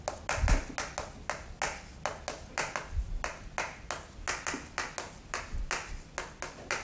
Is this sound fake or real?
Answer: real